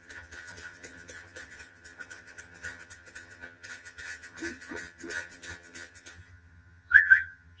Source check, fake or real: fake